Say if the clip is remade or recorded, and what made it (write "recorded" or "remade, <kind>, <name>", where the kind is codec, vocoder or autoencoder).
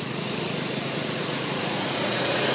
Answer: remade, vocoder, Vocos